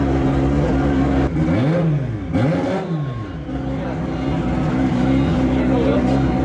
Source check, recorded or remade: recorded